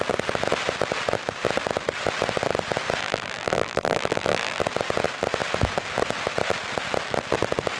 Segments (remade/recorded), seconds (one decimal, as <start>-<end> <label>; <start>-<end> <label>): 0.0-3.0 recorded; 3.0-4.6 remade; 4.6-7.8 recorded